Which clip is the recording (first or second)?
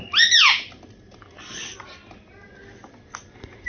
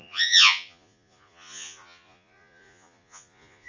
first